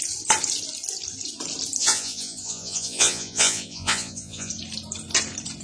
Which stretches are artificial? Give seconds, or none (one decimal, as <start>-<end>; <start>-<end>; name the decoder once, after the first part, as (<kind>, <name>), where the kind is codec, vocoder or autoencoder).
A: 1.8-4.5 (vocoder, Vocos)